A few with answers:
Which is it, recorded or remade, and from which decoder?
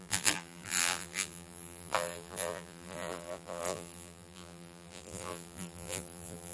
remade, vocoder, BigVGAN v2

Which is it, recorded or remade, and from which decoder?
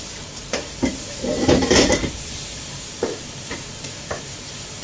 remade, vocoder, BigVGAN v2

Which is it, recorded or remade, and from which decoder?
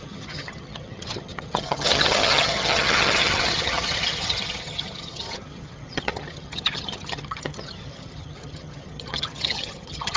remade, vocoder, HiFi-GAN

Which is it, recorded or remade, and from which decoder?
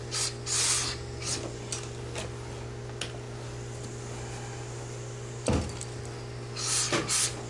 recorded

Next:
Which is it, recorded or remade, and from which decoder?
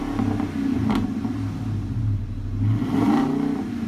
recorded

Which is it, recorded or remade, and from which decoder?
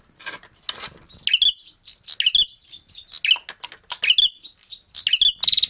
recorded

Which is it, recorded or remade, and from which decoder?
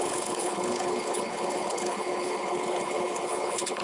remade, codec, HILCodec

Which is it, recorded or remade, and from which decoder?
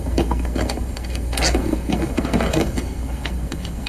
remade, codec, SNAC